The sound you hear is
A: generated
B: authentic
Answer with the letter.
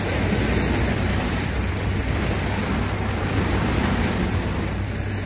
B